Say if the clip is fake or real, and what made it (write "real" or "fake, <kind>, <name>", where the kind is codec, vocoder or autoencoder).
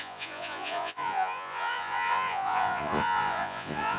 fake, vocoder, Vocos